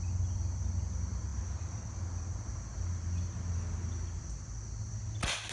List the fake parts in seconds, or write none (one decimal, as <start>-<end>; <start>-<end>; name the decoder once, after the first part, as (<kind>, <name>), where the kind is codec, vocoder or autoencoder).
none